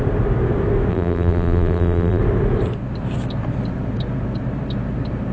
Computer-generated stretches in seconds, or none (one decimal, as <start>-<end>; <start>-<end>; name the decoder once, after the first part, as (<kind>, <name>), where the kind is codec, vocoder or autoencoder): 0.9-2.2 (vocoder, BigVGAN v2)